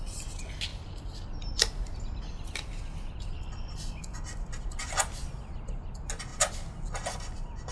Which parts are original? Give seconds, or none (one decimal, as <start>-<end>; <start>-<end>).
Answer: 0.0-7.7